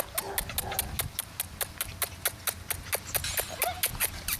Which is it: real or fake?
real